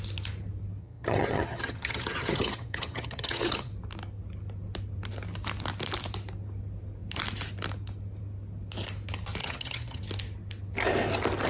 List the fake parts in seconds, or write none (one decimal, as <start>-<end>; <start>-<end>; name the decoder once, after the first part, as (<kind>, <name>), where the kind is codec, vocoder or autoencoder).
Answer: 0.8-3.7 (vocoder, HiFi-GAN); 9.4-10.0